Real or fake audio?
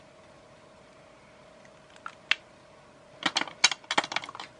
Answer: real